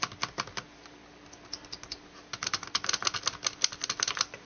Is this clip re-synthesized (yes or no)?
no